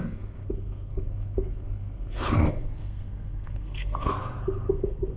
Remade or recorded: remade